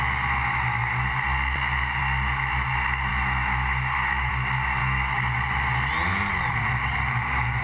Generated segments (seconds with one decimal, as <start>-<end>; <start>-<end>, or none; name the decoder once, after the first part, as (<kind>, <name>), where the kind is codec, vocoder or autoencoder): 3.1-4.3 (autoencoder, DAC-VAE); 4.8-5.5